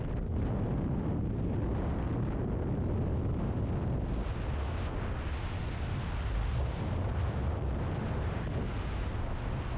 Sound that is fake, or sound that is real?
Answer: real